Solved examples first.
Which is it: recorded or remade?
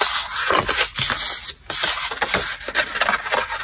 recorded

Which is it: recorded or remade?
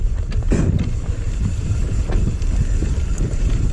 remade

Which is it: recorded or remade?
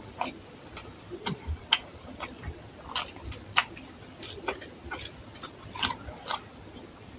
recorded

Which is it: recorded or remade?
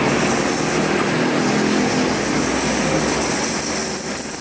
recorded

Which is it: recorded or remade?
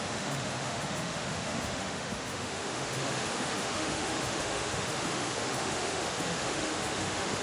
remade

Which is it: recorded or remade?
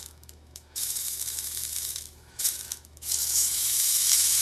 remade